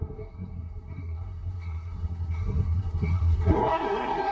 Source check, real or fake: fake